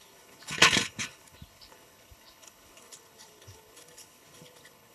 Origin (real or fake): fake